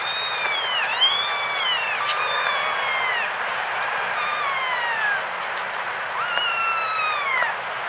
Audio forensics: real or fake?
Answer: real